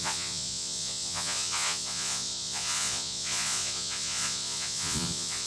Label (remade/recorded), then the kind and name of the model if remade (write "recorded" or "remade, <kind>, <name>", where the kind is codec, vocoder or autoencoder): remade, vocoder, Vocos